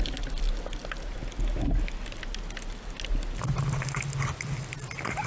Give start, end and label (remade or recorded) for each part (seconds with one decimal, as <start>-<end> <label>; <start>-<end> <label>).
0.0-5.3 recorded